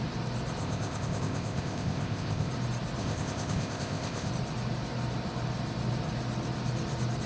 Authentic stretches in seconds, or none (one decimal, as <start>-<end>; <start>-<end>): 0.0-0.6; 2.5-3.0; 4.3-7.3